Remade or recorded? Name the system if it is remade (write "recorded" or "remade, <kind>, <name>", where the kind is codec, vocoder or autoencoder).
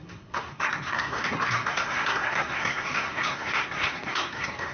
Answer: remade, codec, SNAC